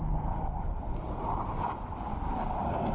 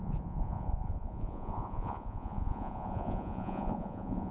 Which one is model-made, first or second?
second